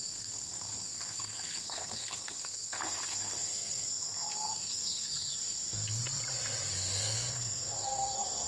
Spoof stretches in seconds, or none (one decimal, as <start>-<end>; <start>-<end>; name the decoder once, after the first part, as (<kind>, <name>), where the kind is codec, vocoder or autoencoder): 0.0-6.0 (codec, SNAC); 6.7-8.5